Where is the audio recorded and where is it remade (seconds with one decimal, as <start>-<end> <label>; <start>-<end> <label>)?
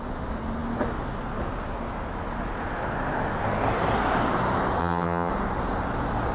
0.0-4.8 recorded; 4.8-5.3 remade; 5.3-6.3 recorded